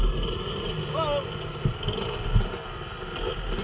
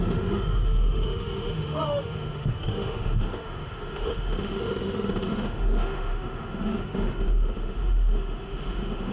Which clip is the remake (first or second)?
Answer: second